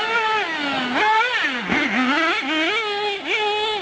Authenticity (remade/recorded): recorded